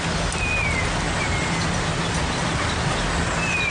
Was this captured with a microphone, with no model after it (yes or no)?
yes